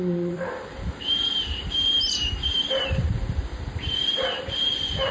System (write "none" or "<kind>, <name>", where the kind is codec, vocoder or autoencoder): vocoder, BigVGAN v2